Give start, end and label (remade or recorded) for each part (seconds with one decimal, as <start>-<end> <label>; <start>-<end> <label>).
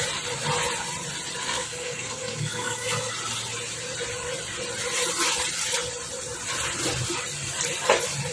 0.0-1.4 recorded; 1.4-3.1 remade; 3.1-8.3 recorded